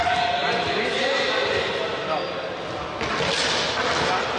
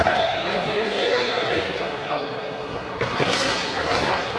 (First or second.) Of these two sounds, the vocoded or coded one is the second